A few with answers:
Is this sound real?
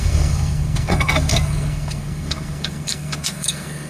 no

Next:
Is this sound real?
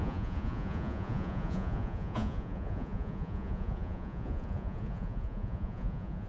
no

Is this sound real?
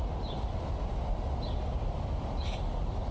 yes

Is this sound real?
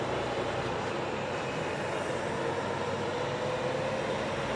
no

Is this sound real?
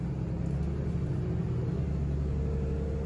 yes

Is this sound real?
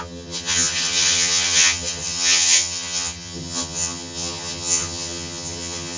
no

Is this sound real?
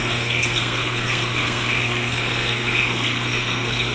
no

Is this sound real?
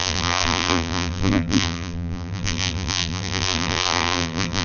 no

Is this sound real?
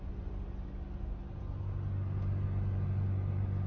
yes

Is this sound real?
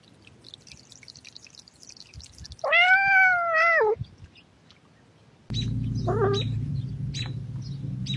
yes